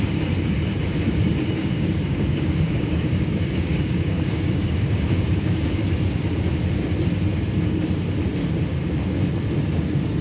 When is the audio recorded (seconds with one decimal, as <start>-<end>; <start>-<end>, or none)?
0.0-1.6; 5.8-10.2